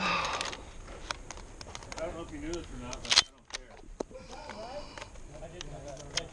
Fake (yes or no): no